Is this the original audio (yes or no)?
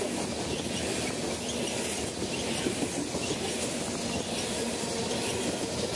yes